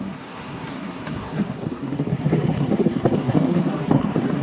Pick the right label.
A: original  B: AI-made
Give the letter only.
B